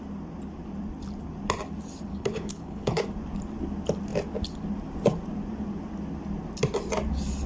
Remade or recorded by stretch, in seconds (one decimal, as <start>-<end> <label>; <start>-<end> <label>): 0.0-2.1 recorded; 2.1-3.0 remade; 3.0-7.5 recorded